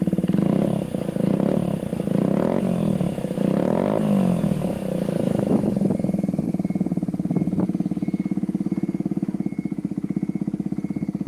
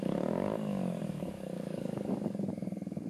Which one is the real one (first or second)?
first